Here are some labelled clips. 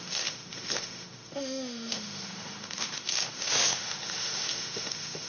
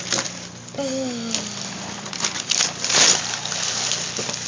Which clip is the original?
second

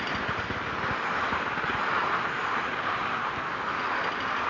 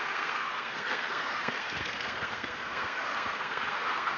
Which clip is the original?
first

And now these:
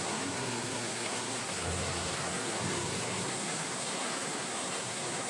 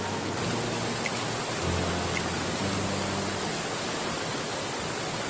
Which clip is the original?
second